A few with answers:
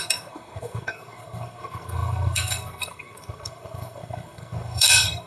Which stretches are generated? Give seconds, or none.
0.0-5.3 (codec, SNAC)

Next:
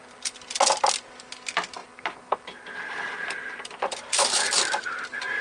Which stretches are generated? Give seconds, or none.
none